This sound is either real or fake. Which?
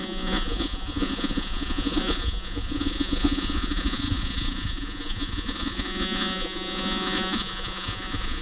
fake